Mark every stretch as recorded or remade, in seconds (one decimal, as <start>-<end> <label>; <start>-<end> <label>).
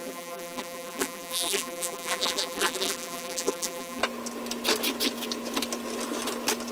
0.0-4.0 remade; 4.0-6.7 recorded